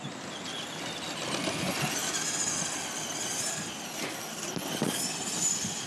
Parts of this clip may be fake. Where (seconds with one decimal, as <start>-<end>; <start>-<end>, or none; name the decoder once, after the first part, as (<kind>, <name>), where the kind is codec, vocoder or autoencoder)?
none